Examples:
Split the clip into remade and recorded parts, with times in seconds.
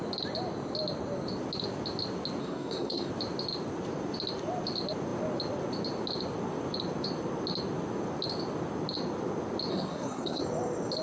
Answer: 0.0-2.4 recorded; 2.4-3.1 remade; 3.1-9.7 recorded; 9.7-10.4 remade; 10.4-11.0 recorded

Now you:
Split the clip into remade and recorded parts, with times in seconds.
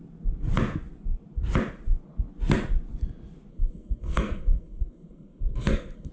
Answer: 0.0-3.5 recorded; 3.5-6.1 remade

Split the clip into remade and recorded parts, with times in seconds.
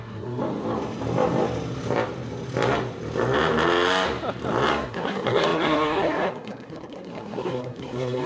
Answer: 0.0-0.4 remade; 0.4-4.7 recorded; 4.7-8.3 remade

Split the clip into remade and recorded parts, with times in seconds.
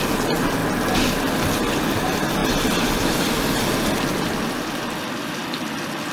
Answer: 0.0-6.1 recorded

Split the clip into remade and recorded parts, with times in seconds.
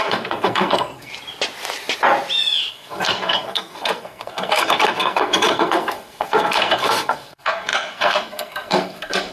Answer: 0.0-1.1 remade; 1.1-2.7 recorded; 2.7-9.3 remade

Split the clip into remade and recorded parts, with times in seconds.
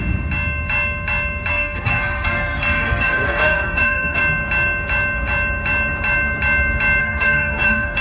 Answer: 0.0-1.5 recorded; 1.5-4.2 remade; 4.2-7.0 recorded; 7.0-8.0 remade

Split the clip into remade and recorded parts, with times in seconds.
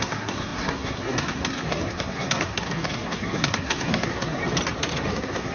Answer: 0.0-4.4 remade; 4.4-5.1 recorded; 5.1-5.5 remade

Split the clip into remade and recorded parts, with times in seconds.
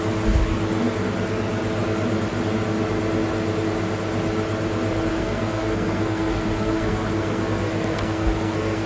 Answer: 0.0-5.1 recorded; 5.1-8.9 remade